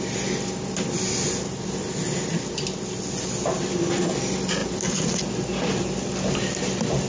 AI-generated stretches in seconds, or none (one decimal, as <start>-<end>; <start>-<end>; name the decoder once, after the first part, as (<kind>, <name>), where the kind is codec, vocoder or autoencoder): none